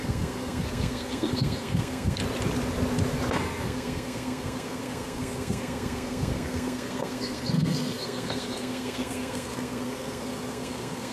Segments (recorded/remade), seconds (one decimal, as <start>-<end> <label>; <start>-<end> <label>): 0.0-2.2 remade; 2.2-3.3 recorded; 3.3-11.1 remade